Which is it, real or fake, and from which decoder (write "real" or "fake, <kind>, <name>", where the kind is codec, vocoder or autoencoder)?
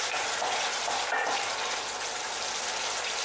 real